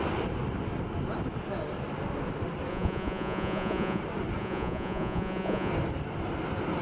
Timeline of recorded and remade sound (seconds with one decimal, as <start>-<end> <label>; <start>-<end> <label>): 0.0-2.7 recorded; 2.7-4.0 remade; 4.0-4.4 recorded; 4.4-5.7 remade; 5.7-6.8 recorded